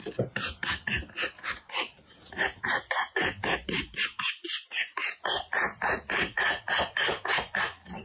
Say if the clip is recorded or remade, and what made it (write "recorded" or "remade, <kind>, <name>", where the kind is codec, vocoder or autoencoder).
remade, vocoder, BigVGAN v2